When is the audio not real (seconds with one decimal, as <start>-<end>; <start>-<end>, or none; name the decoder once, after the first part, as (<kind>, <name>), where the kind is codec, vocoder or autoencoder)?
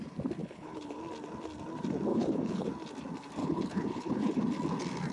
0.4-1.0 (codec, HILCodec); 2.1-2.7; 3.4-4.4